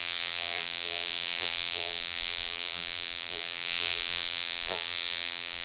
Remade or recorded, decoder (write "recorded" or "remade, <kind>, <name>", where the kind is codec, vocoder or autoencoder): remade, vocoder, BigVGAN v2